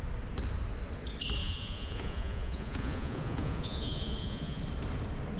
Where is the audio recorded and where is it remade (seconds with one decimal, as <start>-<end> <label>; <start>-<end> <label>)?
0.0-1.4 recorded; 1.4-4.6 remade; 4.6-5.4 recorded